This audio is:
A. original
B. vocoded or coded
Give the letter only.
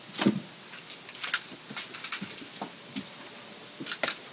A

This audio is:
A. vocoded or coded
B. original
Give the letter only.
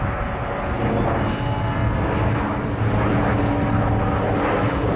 B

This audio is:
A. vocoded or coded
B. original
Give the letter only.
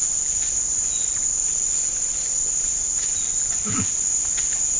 B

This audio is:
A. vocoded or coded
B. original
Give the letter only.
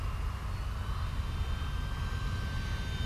B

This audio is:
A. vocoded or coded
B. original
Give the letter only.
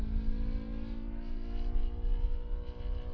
B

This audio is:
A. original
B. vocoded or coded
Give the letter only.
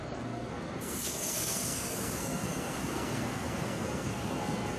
B